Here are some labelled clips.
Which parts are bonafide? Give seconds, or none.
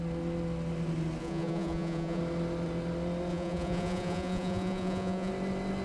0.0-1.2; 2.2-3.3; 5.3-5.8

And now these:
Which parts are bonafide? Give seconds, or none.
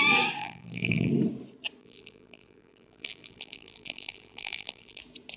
0.0-0.4; 1.1-1.8; 5.0-5.4